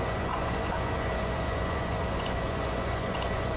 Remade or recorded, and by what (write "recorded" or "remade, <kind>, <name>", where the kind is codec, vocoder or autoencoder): remade, vocoder, Vocos